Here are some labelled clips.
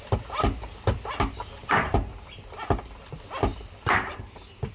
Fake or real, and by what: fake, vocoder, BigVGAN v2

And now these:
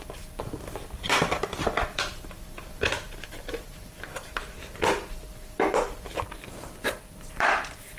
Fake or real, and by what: fake, vocoder, BigVGAN v2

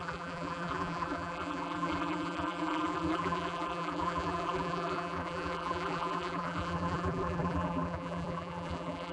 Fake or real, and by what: fake, vocoder, BigVGAN v2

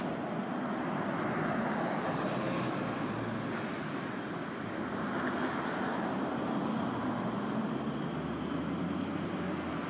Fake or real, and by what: real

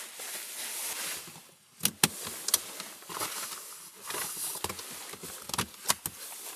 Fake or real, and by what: real